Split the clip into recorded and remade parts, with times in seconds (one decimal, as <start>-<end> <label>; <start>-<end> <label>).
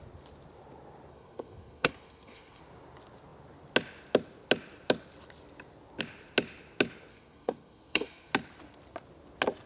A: 0.0-1.1 recorded; 1.1-2.6 remade; 2.6-7.1 recorded; 7.1-8.3 remade; 8.3-9.7 recorded